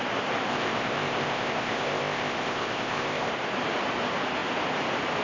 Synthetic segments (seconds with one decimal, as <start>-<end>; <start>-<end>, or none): 0.5-3.3